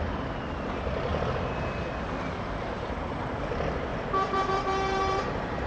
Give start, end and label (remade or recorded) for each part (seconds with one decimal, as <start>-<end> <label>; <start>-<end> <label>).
0.0-3.9 recorded; 3.9-5.3 remade; 5.3-5.7 recorded